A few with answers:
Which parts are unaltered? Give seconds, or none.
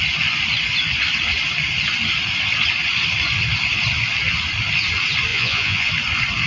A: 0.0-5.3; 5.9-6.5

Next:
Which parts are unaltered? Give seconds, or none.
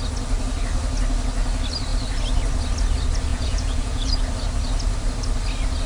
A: 0.0-3.3; 4.2-5.9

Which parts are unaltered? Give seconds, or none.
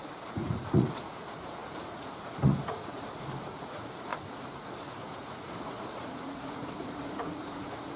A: none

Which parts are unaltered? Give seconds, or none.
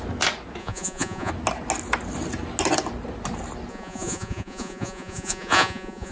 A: 0.0-0.6; 1.3-3.7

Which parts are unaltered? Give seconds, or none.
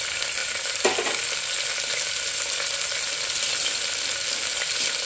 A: 0.0-5.1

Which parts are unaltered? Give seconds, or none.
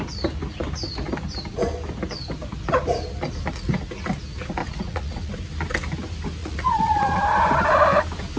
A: 0.0-4.6; 5.3-6.4; 7.2-8.4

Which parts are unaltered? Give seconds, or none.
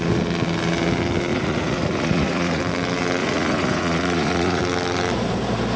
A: 0.0-1.3; 2.6-3.2; 4.6-5.8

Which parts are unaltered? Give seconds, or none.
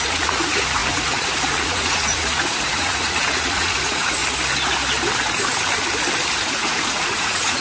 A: 4.2-6.4